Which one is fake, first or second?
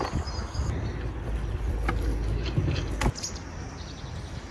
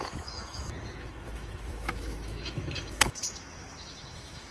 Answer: second